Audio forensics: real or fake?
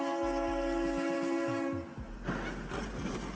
real